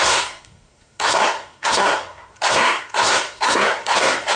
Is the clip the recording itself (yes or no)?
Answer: no